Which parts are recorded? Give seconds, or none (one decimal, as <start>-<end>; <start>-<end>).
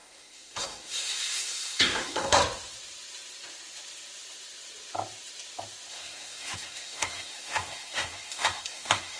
2.4-5.9